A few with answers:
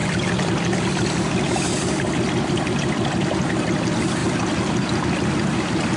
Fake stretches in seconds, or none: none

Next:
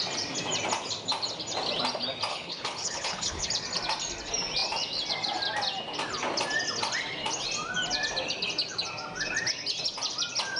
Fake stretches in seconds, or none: 2.3-3.5 (codec, HILCodec)

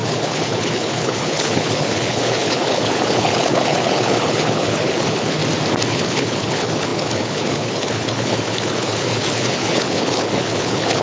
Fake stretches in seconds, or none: 0.0-5.4 (codec, HILCodec); 5.9-11.0

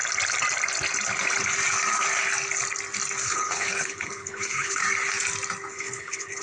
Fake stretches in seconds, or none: 3.2-4.8 (codec, HILCodec); 5.7-6.4

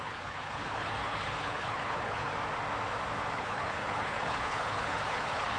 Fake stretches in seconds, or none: 0.0-2.3 (codec, HILCodec); 3.3-5.6

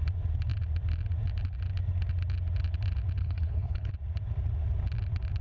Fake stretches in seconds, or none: 3.2-3.9 (codec, HILCodec)

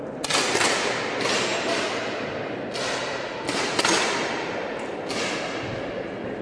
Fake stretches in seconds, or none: none